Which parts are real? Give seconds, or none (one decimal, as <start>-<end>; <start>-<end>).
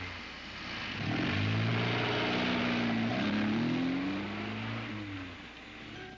0.0-3.1; 4.9-6.2